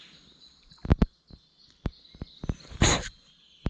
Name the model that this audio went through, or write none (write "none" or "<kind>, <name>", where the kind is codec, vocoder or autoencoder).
none